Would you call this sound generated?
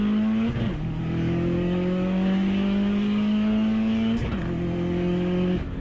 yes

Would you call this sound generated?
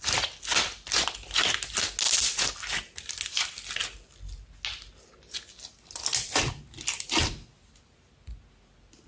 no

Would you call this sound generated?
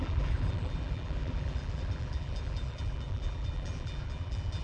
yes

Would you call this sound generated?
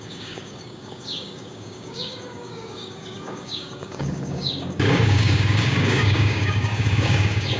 yes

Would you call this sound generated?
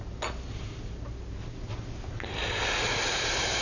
no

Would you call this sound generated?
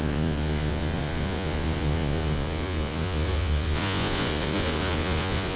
yes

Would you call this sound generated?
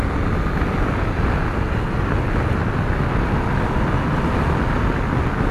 no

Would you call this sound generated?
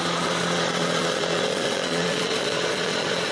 yes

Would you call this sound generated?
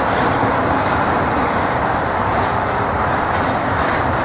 yes